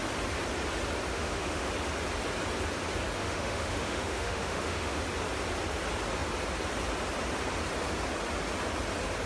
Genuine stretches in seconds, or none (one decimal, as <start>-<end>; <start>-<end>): 0.0-1.1; 1.7-3.2; 5.0-9.3